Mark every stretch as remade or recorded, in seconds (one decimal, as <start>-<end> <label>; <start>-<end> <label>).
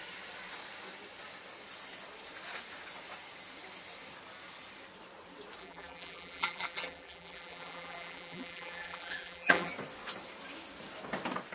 0.0-5.6 recorded; 5.6-9.7 remade; 9.7-11.5 recorded